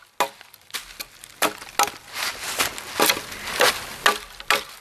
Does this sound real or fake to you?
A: real